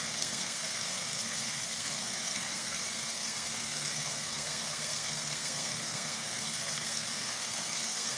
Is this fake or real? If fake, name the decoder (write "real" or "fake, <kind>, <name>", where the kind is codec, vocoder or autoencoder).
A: fake, codec, SNAC